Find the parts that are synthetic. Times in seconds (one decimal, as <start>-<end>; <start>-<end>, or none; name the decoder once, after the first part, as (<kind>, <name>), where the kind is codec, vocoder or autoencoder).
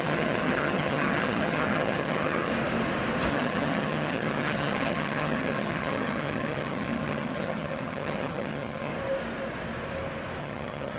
0.0-2.5 (vocoder, HiFi-GAN); 3.3-8.9; 10.4-11.0